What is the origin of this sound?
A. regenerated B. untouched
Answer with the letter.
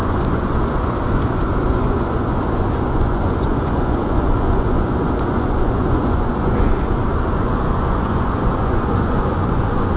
A